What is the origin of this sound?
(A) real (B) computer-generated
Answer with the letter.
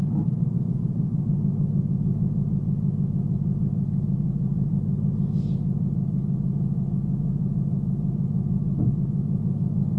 A